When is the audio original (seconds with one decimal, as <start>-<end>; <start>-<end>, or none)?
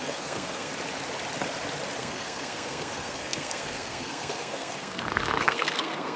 0.7-2.0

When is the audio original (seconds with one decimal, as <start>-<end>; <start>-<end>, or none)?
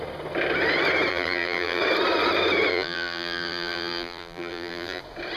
0.0-1.1; 1.8-2.7; 5.0-5.4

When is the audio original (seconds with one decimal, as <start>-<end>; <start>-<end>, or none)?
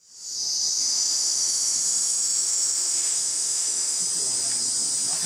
0.0-0.8; 4.0-5.3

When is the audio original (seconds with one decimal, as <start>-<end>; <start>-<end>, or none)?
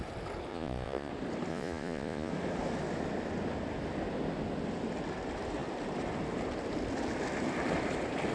0.0-0.5; 1.1-1.5; 2.3-8.3